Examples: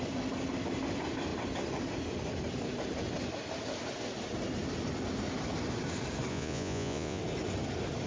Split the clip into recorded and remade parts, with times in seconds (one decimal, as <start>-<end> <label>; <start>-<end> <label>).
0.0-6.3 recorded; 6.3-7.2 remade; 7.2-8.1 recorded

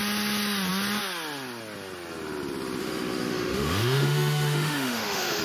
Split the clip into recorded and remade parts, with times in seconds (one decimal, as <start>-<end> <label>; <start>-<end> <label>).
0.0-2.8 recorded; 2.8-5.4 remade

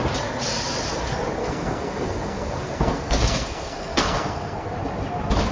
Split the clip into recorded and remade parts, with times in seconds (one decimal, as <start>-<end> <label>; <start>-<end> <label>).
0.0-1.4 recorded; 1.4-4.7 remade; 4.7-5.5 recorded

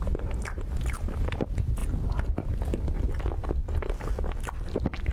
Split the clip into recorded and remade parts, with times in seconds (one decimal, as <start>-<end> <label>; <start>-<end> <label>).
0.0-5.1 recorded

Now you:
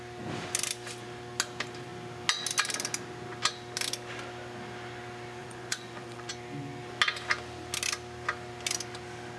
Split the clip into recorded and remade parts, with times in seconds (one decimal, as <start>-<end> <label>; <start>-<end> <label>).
0.0-5.4 recorded; 5.4-6.3 remade; 6.3-9.4 recorded